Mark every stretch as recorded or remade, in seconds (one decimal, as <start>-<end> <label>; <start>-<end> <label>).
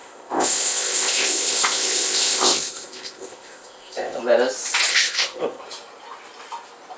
0.0-4.2 remade; 4.2-4.9 recorded; 4.9-5.6 remade; 5.6-7.0 recorded